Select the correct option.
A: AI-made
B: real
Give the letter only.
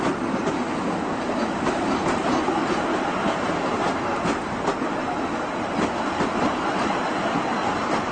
B